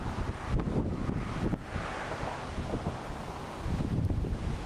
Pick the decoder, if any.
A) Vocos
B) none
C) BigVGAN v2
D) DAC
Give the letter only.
B